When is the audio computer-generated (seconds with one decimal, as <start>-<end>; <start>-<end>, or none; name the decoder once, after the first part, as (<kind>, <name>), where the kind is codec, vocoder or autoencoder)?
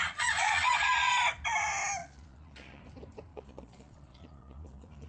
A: 0.0-1.1 (vocoder, Vocos); 2.0-2.8; 3.3-5.1